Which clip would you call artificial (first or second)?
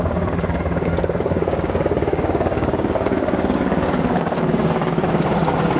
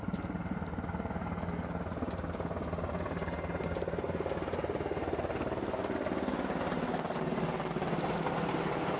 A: first